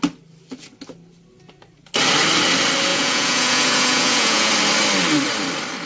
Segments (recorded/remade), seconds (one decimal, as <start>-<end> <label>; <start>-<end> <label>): 0.0-2.9 recorded; 2.9-4.5 remade; 4.5-5.9 recorded

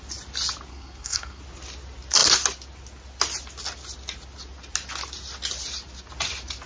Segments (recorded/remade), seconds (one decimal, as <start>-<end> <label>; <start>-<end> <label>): 0.0-0.7 recorded; 0.7-1.4 remade; 1.4-6.7 recorded

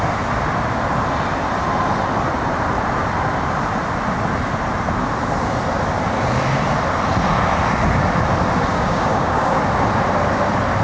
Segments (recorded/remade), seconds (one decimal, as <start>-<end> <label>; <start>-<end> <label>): 0.0-8.7 recorded; 8.7-9.6 remade; 9.6-10.8 recorded

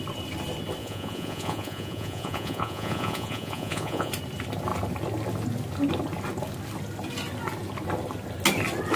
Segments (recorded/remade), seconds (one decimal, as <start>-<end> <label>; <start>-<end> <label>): 0.0-0.8 recorded; 0.8-4.1 remade; 4.1-9.0 recorded

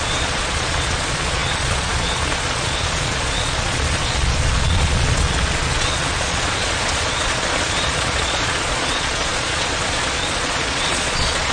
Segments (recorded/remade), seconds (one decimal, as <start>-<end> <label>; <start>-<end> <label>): 0.0-11.5 remade